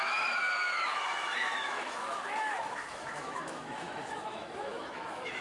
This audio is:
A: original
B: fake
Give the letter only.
B